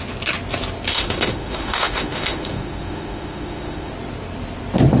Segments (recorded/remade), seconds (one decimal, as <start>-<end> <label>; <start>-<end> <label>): 0.0-0.9 recorded; 0.9-3.9 remade; 3.9-5.0 recorded